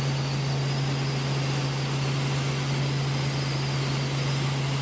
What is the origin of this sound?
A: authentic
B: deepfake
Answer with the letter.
A